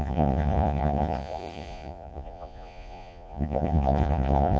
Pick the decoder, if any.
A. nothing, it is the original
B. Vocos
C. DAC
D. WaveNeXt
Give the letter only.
B